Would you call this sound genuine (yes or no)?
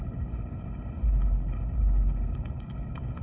no